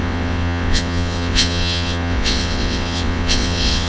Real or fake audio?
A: fake